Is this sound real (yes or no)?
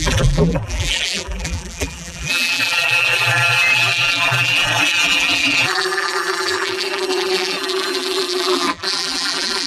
no